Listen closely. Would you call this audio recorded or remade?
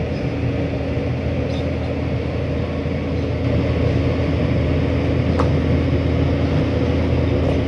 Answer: recorded